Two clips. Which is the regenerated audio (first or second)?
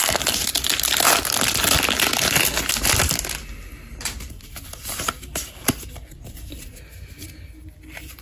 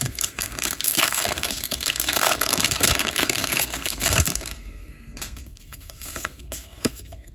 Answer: second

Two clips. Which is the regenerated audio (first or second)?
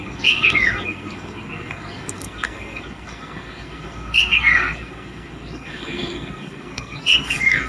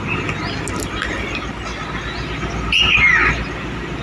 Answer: first